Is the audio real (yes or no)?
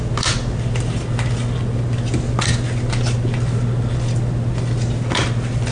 yes